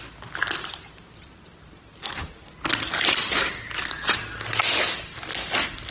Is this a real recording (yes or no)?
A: yes